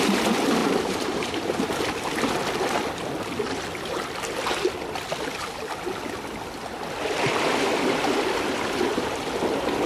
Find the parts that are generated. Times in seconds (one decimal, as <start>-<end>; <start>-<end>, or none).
0.6-1.5